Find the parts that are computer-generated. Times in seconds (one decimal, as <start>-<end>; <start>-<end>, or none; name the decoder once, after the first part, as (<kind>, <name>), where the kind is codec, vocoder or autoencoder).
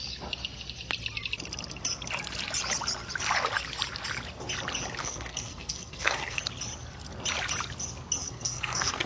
5.0-6.4 (codec, SNAC); 8.2-9.1